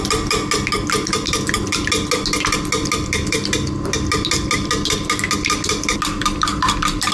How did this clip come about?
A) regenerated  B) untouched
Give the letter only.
B